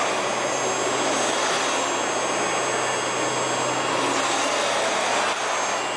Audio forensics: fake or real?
real